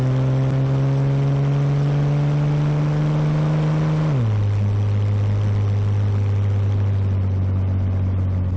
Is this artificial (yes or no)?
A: no